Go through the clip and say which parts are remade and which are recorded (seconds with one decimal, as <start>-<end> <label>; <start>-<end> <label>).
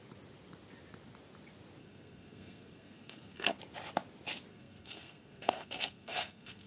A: 0.0-1.8 recorded; 1.8-3.6 remade; 3.6-4.5 recorded; 4.5-6.7 remade